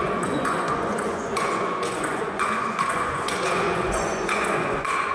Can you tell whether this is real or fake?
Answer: fake